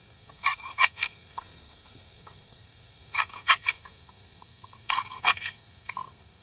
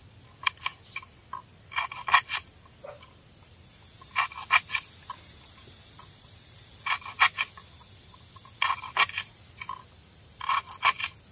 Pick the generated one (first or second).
first